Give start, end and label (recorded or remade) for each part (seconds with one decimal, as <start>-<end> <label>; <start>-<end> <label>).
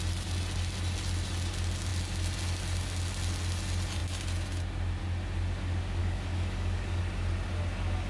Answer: 0.0-6.0 recorded; 6.0-7.0 remade; 7.0-8.1 recorded